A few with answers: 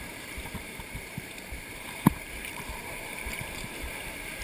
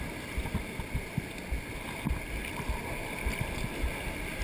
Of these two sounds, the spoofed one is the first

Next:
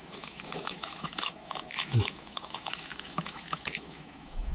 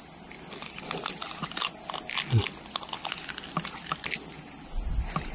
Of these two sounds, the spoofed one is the first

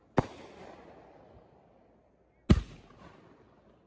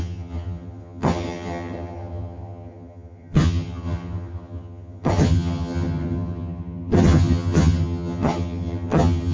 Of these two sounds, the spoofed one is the second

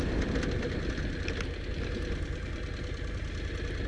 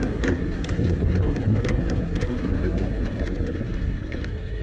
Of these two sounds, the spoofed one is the second